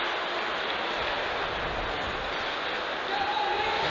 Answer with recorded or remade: recorded